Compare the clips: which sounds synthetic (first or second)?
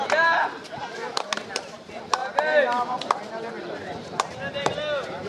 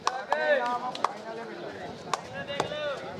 first